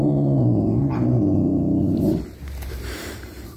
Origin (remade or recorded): remade